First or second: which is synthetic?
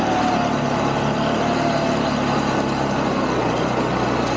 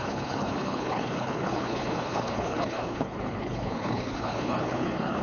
second